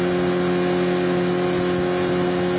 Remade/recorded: recorded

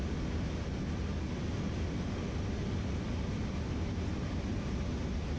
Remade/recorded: recorded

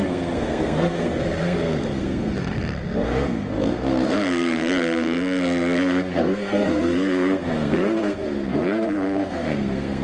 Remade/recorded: remade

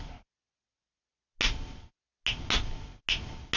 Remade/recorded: recorded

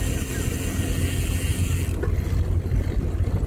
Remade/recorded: recorded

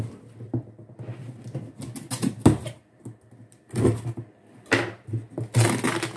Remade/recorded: recorded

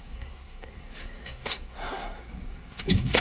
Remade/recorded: remade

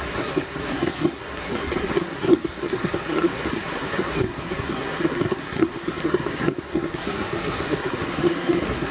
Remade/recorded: remade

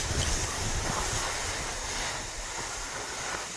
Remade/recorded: recorded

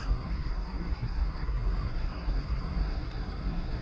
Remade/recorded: remade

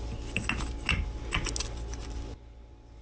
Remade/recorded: recorded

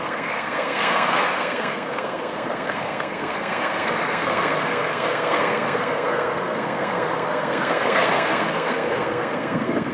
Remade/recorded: remade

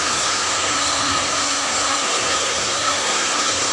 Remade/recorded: remade